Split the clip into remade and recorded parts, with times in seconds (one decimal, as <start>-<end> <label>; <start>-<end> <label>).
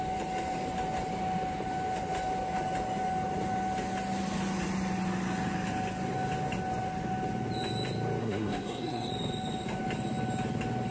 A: 0.0-8.2 recorded; 8.2-9.1 remade; 9.1-10.9 recorded